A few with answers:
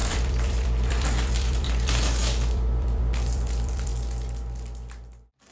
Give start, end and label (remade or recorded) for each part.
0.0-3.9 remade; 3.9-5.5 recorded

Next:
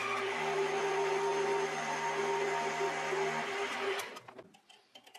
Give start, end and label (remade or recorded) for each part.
0.0-5.2 recorded

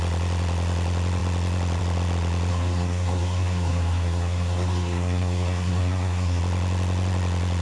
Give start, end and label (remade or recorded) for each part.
0.0-2.5 recorded; 2.5-6.4 remade; 6.4-7.6 recorded

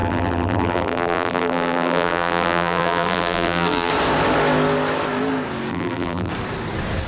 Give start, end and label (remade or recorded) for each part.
0.0-3.9 remade; 3.9-5.7 recorded; 5.7-6.3 remade; 6.3-7.1 recorded

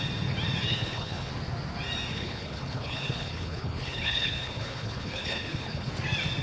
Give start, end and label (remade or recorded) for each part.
0.0-0.7 recorded; 0.7-1.3 remade; 1.3-2.1 recorded; 2.1-5.9 remade; 5.9-6.4 recorded

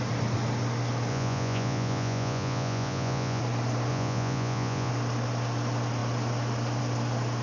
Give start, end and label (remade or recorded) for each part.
0.0-1.1 recorded; 1.1-3.4 remade; 3.4-3.9 recorded; 3.9-4.9 remade; 4.9-7.4 recorded

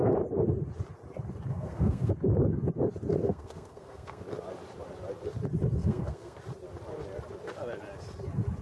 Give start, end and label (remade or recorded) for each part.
0.0-1.5 recorded; 1.5-2.1 remade; 2.1-3.2 recorded; 3.2-4.2 remade; 4.2-5.8 recorded; 5.8-6.4 remade; 6.4-8.6 recorded

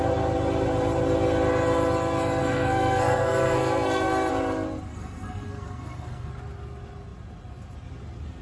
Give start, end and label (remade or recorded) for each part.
0.0-2.4 recorded; 2.4-4.3 remade; 4.3-4.9 recorded; 4.9-6.3 remade; 6.3-8.4 recorded